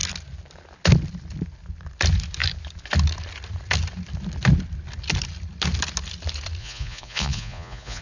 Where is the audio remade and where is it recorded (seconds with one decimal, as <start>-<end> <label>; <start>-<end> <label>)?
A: 0.0-6.6 recorded; 6.6-8.0 remade